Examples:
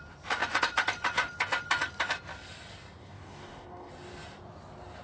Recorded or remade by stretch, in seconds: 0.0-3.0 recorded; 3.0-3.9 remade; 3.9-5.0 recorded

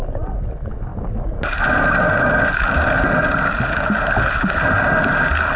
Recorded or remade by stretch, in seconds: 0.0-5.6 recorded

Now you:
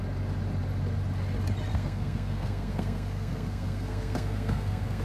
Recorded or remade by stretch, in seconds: 0.0-1.7 recorded; 1.7-5.0 remade

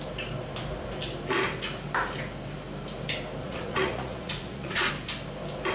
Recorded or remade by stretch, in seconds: 0.0-3.4 recorded; 3.4-4.9 remade; 4.9-5.7 recorded